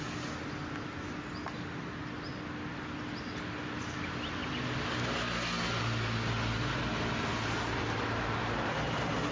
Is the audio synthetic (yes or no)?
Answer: no